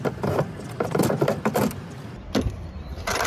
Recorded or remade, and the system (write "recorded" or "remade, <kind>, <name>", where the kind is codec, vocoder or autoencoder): remade, vocoder, BigVGAN v2